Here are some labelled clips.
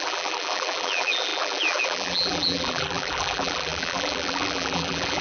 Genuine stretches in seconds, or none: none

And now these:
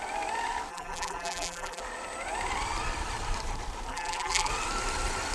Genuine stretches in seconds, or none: 0.0-0.7; 1.8-3.9; 4.5-5.3

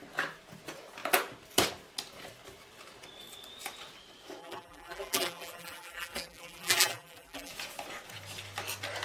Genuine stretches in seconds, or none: 0.0-4.4; 7.5-9.0

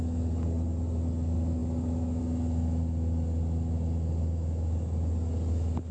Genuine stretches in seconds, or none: 0.0-5.9